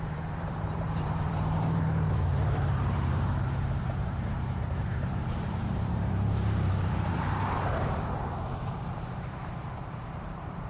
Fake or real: fake